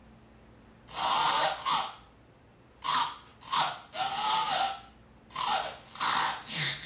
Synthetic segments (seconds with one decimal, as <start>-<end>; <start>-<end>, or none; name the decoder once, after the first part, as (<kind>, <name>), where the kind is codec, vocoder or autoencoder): none